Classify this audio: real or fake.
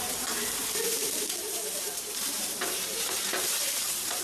fake